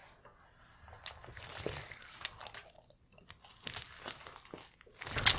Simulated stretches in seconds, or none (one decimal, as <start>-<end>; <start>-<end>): none